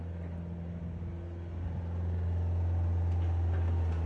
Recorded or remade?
recorded